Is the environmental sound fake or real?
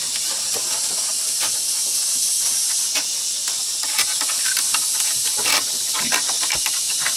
real